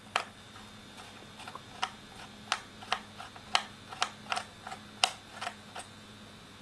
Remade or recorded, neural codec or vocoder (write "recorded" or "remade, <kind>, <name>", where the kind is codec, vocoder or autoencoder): recorded